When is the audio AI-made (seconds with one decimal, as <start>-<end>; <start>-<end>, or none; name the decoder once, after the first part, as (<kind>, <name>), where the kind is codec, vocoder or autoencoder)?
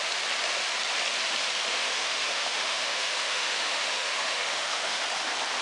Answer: 1.7-5.0 (autoencoder, DAC-VAE)